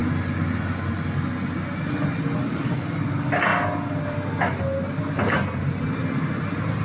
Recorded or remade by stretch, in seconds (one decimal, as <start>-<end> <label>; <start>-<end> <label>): 0.0-6.8 recorded